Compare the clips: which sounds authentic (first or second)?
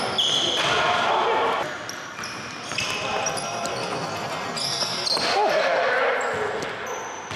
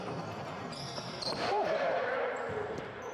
first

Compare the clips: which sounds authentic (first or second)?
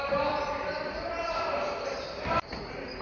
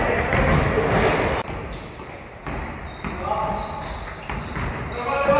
second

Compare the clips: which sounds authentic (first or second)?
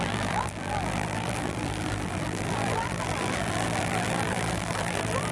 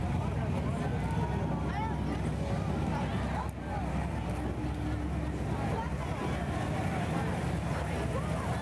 second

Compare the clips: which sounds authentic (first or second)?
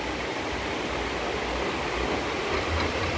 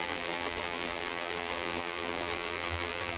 first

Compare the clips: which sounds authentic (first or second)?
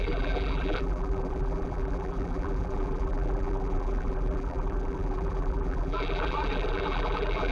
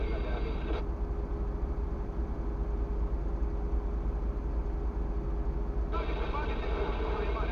second